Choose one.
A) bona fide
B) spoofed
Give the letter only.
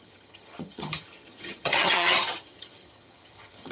B